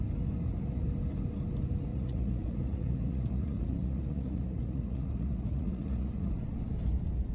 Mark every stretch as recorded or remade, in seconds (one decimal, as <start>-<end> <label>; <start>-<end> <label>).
0.0-1.9 recorded; 1.9-6.3 remade; 6.3-7.3 recorded